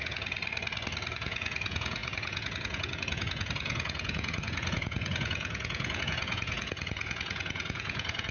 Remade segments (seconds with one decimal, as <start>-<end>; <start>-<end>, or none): 0.0-0.4; 1.1-8.3